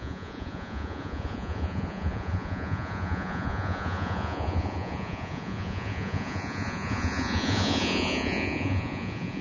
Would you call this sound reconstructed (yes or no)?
yes